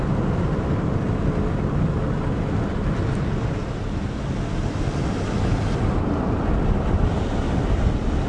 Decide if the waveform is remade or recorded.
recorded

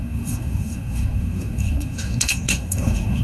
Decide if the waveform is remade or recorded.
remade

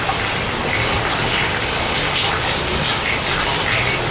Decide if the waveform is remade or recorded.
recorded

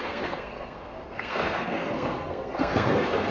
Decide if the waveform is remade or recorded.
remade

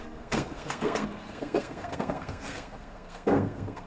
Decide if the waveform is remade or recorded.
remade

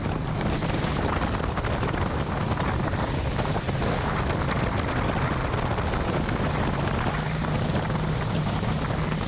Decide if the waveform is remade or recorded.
recorded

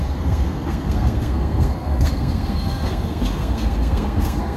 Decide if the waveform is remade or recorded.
remade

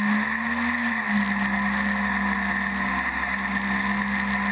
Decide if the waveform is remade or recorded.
recorded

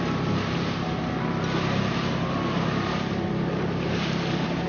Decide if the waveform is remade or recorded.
recorded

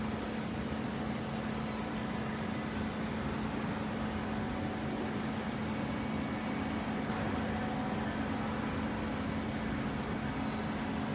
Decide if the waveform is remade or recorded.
recorded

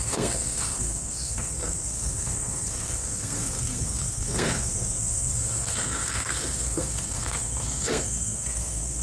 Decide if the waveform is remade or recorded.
remade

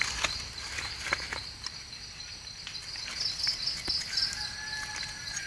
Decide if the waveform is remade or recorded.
recorded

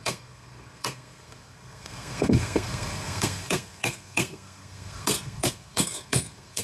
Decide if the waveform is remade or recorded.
remade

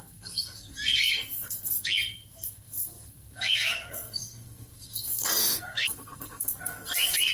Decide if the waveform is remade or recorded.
remade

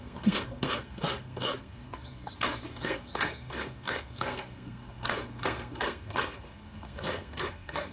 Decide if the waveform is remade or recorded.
remade